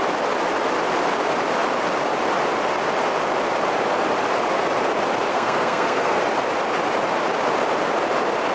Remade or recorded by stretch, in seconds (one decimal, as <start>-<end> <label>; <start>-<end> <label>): 0.0-5.3 recorded; 5.3-6.2 remade; 6.2-8.5 recorded